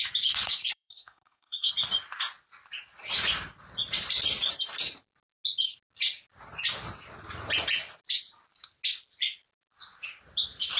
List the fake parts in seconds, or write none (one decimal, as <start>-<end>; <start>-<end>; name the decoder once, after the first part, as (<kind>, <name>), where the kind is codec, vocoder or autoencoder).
0.7-1.7 (codec, SNAC)